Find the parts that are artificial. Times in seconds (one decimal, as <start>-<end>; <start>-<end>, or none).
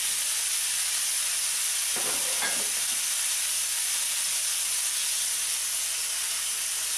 none